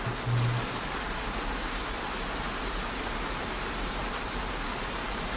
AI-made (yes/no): no